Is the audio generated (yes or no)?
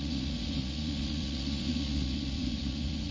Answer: yes